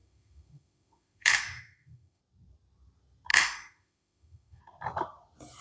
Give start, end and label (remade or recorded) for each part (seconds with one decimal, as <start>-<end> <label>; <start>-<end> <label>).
0.0-2.2 remade; 2.2-3.3 recorded; 3.3-4.6 remade; 4.6-5.6 recorded